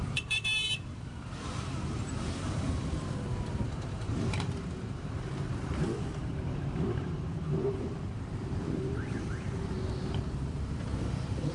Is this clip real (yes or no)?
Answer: no